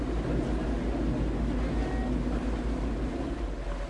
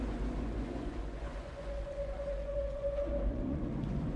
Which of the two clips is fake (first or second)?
second